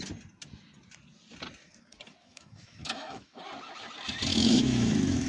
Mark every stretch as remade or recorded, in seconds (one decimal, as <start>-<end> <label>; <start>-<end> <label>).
0.0-2.2 recorded; 2.2-3.4 remade; 3.4-4.3 recorded; 4.3-5.3 remade